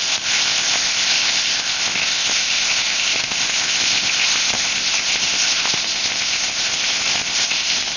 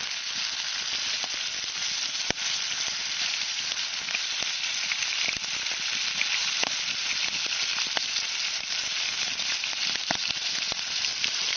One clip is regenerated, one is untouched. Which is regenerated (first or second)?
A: first